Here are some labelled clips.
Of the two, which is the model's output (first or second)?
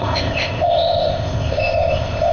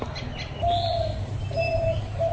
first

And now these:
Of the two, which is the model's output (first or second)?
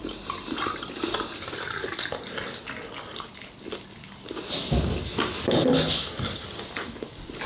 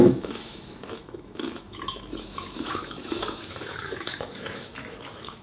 second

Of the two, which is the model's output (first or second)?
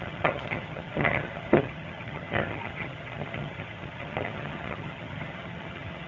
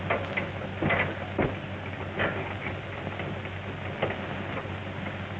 first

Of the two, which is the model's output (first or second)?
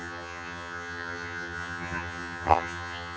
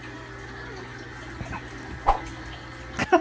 first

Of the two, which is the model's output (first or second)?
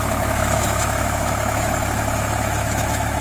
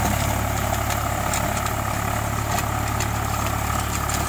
first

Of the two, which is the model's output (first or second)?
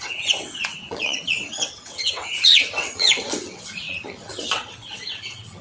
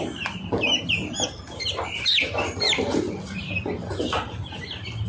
first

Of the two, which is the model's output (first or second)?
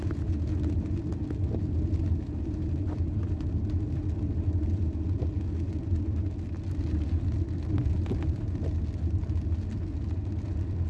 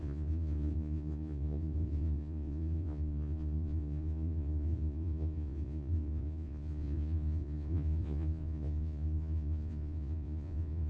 second